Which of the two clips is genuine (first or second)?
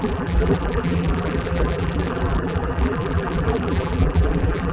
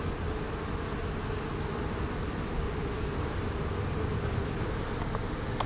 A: second